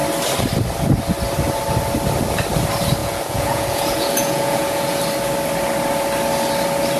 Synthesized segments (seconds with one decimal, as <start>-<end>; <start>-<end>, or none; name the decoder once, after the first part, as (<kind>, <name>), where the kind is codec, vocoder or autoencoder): 3.0-5.0 (vocoder, Vocos)